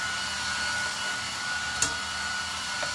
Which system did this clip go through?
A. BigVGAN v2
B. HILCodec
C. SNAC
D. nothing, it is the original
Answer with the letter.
D